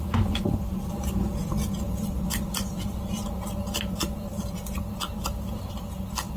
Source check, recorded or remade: recorded